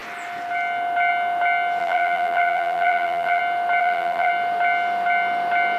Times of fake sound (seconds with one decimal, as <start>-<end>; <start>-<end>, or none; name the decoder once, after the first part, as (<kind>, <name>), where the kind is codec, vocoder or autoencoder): 1.8-3.4 (vocoder, BigVGAN v2); 3.8-4.3